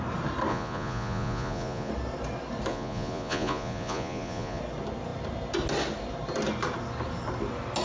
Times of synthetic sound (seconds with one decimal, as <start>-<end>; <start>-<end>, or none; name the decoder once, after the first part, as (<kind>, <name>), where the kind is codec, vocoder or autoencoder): 0.5-1.9 (vocoder, Vocos); 2.7-4.6